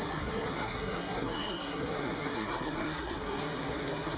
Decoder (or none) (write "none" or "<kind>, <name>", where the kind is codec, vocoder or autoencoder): codec, SNAC